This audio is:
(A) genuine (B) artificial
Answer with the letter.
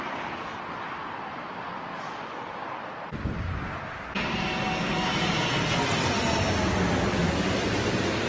A